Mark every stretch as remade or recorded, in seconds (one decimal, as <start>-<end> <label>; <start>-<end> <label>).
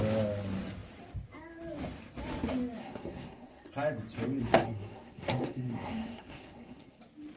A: 0.0-2.8 recorded; 2.8-3.7 remade; 3.7-4.4 recorded; 4.4-7.0 remade; 7.0-7.4 recorded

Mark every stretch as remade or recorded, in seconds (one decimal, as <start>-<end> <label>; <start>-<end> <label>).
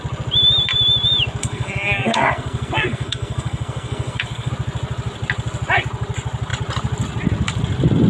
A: 0.0-1.4 recorded; 1.4-4.5 remade; 4.5-8.1 recorded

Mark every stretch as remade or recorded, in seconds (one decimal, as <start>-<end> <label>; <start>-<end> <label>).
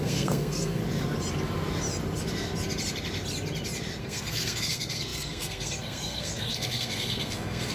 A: 0.0-0.8 remade; 0.8-4.0 recorded; 4.0-7.7 remade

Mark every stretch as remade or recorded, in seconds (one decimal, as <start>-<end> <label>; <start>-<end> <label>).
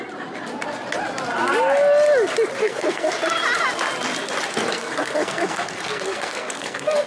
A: 0.0-2.6 recorded; 2.6-3.1 remade; 3.1-4.6 recorded; 4.6-7.1 remade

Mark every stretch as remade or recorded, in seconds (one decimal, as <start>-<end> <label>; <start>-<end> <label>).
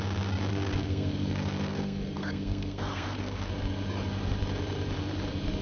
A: 0.0-0.5 recorded; 0.5-3.5 remade; 3.5-5.6 recorded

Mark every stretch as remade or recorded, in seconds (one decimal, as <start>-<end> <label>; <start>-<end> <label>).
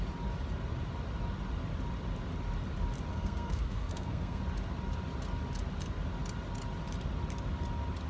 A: 0.0-3.1 recorded; 3.1-4.4 remade; 4.4-8.1 recorded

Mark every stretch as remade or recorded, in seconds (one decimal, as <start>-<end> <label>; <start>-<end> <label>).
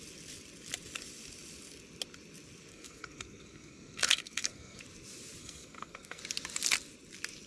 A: 0.0-2.7 recorded; 2.7-4.8 remade; 4.8-5.4 recorded; 5.4-6.2 remade; 6.2-7.5 recorded